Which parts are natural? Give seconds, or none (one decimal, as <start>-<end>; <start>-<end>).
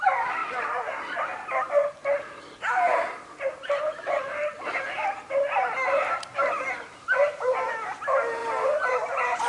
0.0-9.5